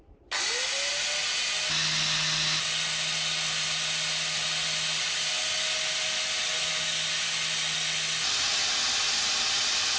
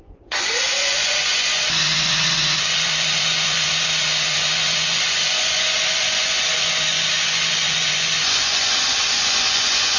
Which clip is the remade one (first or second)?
second